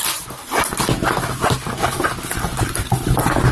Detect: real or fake real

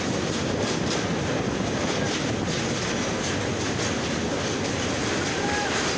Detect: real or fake real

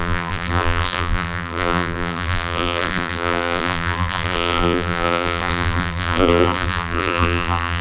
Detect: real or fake fake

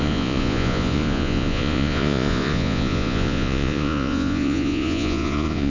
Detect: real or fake fake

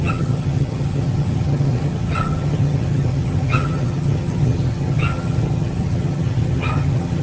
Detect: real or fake fake